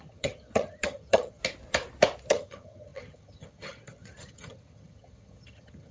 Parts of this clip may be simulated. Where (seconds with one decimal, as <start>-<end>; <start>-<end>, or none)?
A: 0.0-1.4; 2.3-5.9